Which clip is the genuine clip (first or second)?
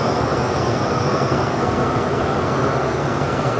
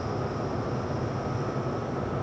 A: second